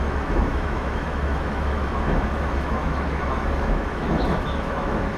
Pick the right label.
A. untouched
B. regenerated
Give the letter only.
B